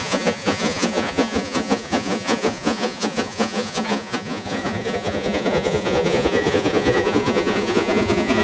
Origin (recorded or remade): remade